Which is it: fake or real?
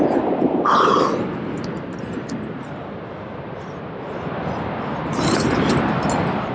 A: real